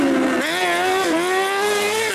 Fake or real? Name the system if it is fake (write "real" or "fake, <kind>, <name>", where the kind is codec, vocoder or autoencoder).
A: real